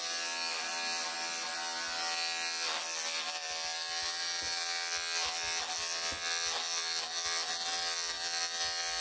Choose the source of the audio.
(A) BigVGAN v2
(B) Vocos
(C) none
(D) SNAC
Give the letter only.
C